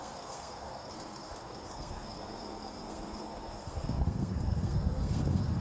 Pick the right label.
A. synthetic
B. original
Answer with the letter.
A